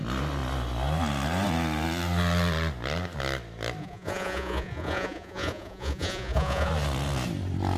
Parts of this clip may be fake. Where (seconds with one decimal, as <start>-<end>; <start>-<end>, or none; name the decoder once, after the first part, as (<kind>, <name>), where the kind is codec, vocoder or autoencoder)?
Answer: 3.8-6.7 (vocoder, Vocos)